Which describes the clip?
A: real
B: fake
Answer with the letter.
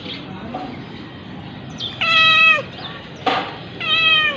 A